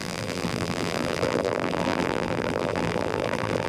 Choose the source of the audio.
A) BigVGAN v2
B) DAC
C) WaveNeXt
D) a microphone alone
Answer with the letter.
A